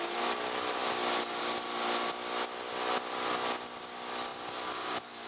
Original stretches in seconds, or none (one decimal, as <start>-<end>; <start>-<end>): 0.0-5.3